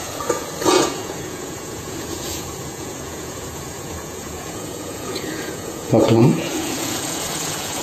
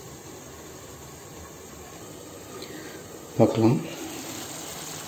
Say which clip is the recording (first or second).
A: second